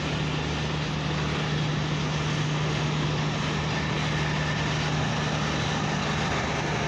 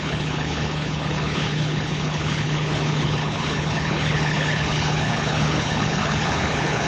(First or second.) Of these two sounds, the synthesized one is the second